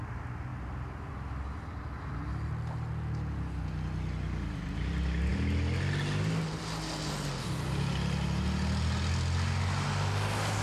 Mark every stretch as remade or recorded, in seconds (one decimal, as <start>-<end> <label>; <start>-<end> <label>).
0.0-10.6 recorded